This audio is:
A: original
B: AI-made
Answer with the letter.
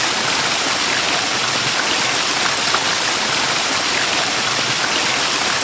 A